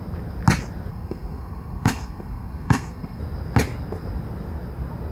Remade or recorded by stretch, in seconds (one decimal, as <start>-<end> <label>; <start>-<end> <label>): 0.0-0.9 recorded; 0.9-3.2 remade; 3.2-5.1 recorded